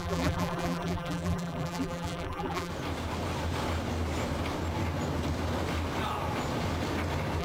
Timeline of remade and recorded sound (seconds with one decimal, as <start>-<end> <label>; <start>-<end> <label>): 0.0-2.7 remade; 2.7-7.4 recorded